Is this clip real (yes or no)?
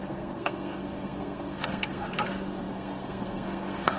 no